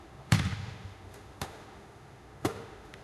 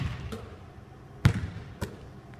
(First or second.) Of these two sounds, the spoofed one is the first